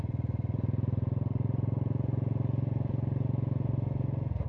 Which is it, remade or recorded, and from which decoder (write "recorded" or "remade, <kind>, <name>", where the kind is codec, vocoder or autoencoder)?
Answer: remade, vocoder, BigVGAN v2